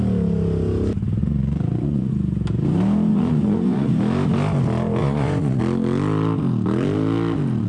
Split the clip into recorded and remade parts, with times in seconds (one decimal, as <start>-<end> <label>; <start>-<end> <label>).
0.0-1.2 recorded; 1.2-2.1 remade; 2.1-3.1 recorded; 3.1-3.9 remade; 3.9-5.0 recorded; 5.0-5.6 remade; 5.6-7.7 recorded